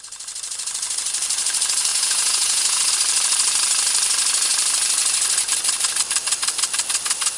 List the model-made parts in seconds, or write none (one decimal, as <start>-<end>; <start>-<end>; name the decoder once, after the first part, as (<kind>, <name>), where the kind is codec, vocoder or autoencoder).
1.9-2.9 (vocoder, Vocos)